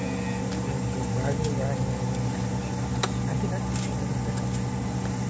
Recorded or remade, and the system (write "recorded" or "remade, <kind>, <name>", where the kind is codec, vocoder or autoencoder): recorded